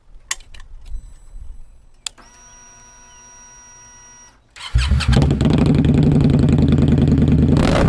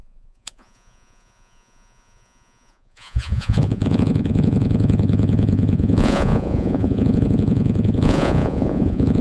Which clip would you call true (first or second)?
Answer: first